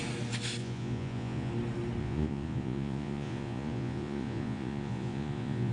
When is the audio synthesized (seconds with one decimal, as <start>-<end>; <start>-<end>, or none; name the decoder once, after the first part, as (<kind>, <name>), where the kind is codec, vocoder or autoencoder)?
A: 0.6-1.5 (vocoder, Vocos); 2.0-5.7